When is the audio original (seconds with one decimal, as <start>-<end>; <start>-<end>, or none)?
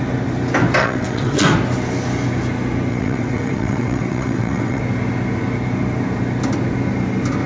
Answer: 0.0-0.8; 1.5-2.9; 4.8-7.5